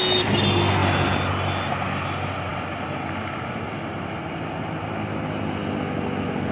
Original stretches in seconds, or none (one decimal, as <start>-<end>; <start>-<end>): 0.0-6.5

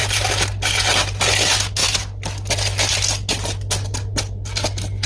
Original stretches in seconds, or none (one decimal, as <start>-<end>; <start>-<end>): 0.0-5.1

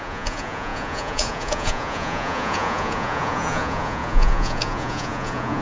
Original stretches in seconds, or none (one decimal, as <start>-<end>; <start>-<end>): none

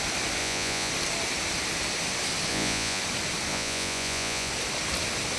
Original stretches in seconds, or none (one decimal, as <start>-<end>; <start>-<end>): 0.0-0.4; 0.9-2.5; 3.0-3.5; 4.5-5.4

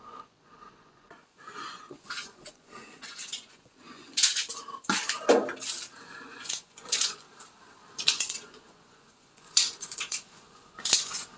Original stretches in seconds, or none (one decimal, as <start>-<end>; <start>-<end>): 4.5-6.0; 7.3-8.1

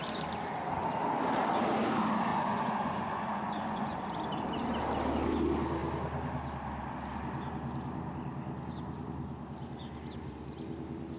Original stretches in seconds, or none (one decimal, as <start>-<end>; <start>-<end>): 0.0-2.3; 4.0-11.2

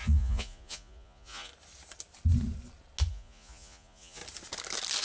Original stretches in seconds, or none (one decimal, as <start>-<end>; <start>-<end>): 1.5-3.1; 4.2-5.0

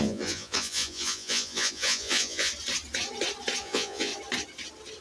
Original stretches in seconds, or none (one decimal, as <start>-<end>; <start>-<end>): 2.5-3.6; 4.1-5.0